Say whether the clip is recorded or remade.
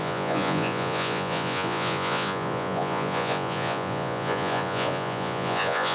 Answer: remade